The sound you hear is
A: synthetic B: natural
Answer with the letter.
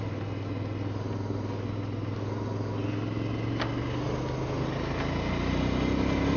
B